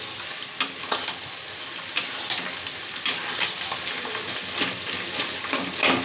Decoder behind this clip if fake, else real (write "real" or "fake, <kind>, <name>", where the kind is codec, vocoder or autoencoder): real